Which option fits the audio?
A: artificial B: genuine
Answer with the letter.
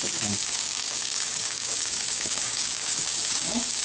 A